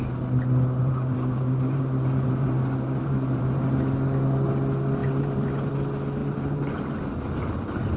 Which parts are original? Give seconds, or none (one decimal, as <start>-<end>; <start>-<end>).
0.0-0.8; 3.7-5.0; 5.7-6.2; 7.0-8.0